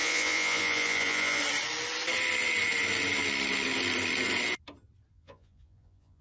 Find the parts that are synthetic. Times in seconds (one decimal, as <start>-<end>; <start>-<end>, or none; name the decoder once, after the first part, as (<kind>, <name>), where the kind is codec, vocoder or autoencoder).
0.0-1.4 (vocoder, Vocos); 5.1-6.2